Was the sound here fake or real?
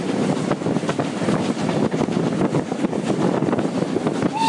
real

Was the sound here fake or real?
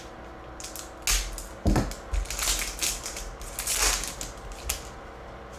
real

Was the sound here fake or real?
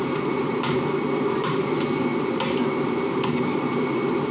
real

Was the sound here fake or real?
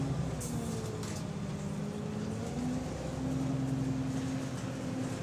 real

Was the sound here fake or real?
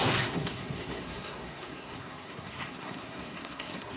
fake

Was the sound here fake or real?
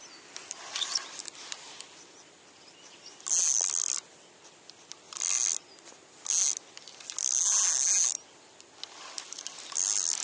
real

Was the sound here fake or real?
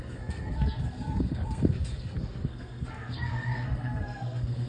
fake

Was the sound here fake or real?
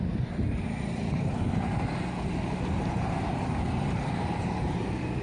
real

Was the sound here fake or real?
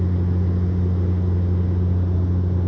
real